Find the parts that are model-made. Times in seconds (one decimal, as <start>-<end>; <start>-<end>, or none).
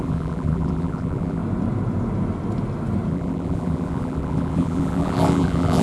0.0-1.4; 3.1-5.8